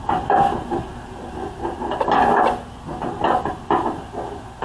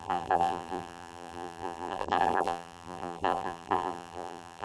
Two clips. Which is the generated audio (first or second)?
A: second